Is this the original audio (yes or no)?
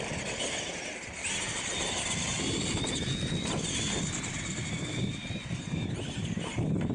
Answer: yes